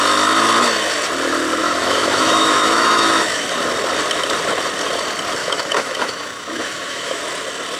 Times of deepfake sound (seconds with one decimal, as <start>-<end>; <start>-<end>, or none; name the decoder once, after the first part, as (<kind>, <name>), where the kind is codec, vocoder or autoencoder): 1.6-3.4 (autoencoder, DAC-VAE); 5.4-7.2

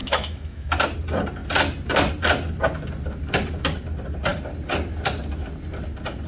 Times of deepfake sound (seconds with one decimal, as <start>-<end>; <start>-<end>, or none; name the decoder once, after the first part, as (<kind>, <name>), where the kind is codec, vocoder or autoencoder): 0.0-0.8 (autoencoder, DAC-VAE)